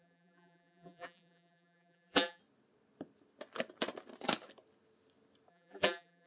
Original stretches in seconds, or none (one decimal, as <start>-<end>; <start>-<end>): 2.4-5.5